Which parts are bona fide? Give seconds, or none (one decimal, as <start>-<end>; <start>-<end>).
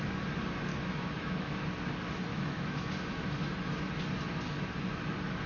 0.0-0.7; 1.6-2.3; 3.5-5.5